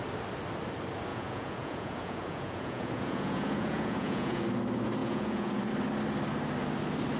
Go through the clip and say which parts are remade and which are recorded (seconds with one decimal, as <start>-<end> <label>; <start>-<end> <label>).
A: 0.0-1.1 recorded; 1.1-4.4 remade; 4.4-5.0 recorded; 5.0-5.7 remade; 5.7-7.2 recorded